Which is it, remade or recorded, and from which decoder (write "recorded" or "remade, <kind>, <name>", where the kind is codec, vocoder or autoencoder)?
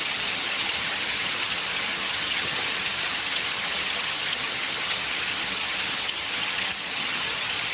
remade, vocoder, HiFi-GAN